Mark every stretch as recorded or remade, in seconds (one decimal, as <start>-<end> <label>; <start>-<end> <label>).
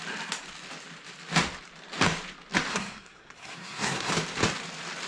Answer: 0.0-2.7 recorded; 2.7-4.1 remade; 4.1-5.1 recorded